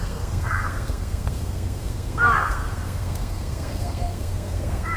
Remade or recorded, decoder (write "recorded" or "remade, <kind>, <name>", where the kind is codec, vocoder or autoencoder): remade, codec, SNAC